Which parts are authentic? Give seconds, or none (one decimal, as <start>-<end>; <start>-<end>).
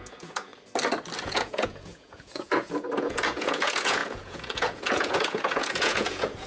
0.5-1.2